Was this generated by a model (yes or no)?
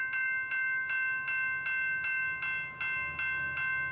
no